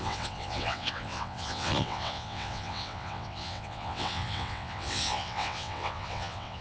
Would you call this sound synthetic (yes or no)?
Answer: yes